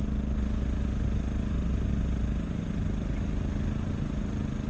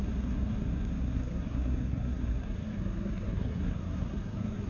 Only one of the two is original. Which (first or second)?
first